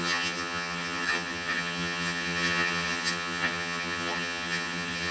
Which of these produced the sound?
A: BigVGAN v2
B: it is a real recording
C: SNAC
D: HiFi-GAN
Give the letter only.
D